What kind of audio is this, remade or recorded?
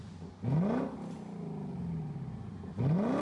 recorded